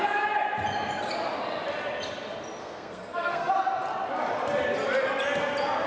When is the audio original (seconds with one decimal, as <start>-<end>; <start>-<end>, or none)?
0.0-2.6; 3.5-5.9